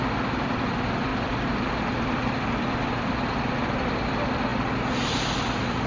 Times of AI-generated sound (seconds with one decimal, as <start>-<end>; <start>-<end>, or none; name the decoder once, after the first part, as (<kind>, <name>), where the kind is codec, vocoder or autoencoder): none